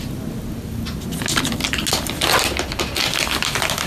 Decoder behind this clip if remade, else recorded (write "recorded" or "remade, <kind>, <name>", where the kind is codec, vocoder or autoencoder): recorded